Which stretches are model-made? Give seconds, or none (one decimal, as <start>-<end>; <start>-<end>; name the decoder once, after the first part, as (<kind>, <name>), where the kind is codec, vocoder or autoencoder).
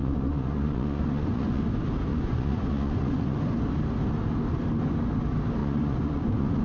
0.0-1.6 (vocoder, Vocos); 2.1-3.4; 5.6-6.6